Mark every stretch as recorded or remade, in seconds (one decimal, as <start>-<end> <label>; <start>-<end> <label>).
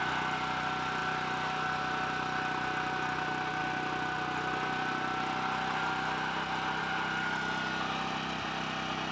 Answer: 0.0-9.1 recorded